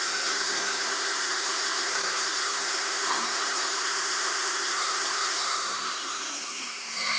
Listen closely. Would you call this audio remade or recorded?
remade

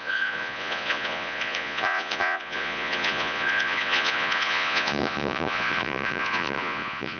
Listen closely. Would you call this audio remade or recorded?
remade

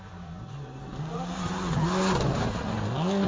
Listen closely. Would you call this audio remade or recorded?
recorded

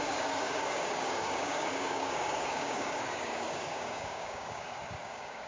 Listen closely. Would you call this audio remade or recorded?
remade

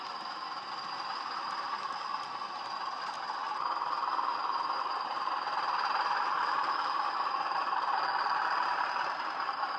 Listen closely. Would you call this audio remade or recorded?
recorded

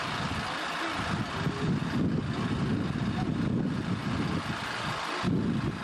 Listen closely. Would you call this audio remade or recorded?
recorded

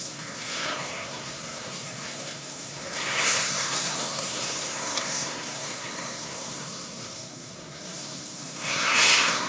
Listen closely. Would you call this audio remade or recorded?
remade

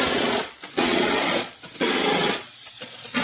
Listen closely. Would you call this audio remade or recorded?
remade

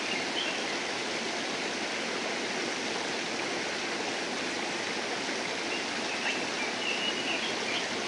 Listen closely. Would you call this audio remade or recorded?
recorded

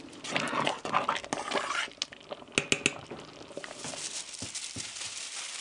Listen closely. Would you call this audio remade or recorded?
recorded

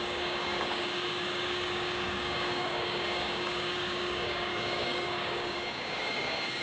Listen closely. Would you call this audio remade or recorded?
remade